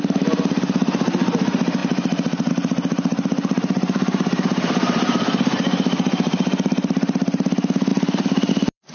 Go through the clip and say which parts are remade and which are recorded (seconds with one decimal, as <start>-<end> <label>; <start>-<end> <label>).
0.0-1.8 remade; 1.8-2.5 recorded; 2.5-8.9 remade